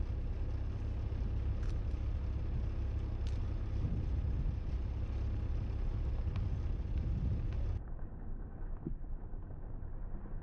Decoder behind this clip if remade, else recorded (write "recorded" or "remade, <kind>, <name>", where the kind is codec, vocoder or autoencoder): recorded